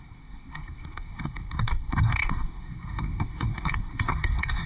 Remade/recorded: remade